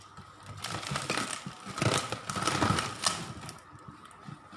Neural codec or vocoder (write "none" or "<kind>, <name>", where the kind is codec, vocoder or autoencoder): none